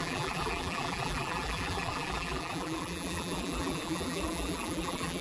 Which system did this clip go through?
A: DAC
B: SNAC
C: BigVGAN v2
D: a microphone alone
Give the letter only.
C